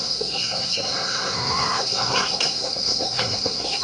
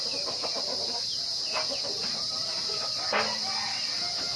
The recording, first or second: second